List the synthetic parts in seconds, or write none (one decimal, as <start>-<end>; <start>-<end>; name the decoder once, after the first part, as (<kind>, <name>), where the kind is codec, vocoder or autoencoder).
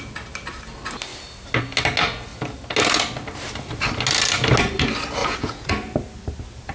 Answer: 5.2-5.7 (vocoder, Vocos)